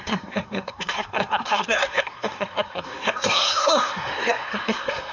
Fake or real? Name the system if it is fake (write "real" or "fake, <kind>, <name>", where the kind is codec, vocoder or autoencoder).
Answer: fake, codec, SNAC